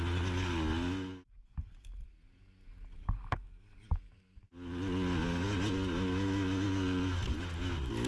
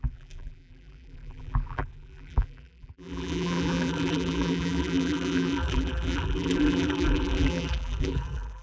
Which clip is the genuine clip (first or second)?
first